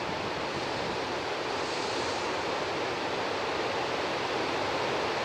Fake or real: real